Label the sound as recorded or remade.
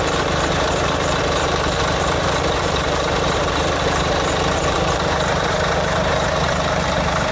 remade